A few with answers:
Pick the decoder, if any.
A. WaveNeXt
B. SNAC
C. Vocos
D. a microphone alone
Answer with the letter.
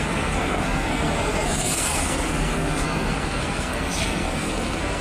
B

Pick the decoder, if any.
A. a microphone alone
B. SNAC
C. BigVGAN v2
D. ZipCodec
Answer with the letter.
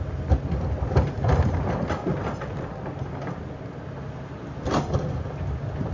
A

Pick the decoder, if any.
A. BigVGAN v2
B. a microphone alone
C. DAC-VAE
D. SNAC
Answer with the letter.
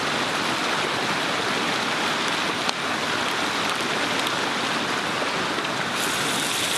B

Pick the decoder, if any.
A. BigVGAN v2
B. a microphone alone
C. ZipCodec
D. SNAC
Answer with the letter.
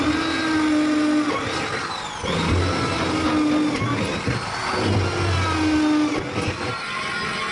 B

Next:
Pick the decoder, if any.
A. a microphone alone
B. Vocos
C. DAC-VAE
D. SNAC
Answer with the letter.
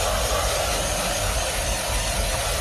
A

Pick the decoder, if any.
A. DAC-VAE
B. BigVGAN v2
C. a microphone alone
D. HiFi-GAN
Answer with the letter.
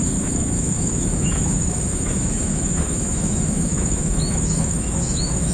A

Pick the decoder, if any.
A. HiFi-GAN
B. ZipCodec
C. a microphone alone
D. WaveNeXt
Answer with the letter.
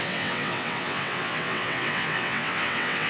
D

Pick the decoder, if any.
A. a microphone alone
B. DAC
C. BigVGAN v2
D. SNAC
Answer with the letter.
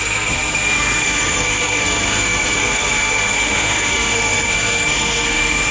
D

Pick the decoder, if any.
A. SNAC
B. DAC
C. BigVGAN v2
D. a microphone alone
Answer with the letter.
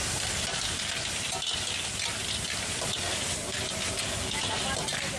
D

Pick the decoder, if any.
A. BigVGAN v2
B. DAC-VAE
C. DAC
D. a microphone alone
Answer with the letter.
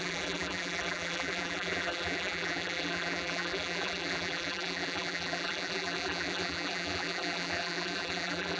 A